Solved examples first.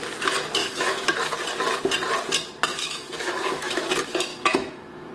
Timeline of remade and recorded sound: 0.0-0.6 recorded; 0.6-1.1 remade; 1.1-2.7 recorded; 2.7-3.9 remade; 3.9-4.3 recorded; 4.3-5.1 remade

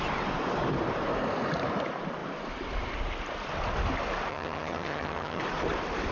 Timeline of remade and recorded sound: 0.0-4.3 recorded; 4.3-5.4 remade; 5.4-6.1 recorded